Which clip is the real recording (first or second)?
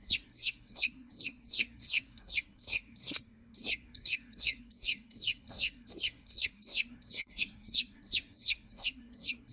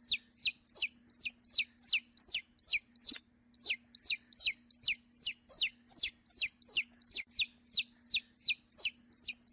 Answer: second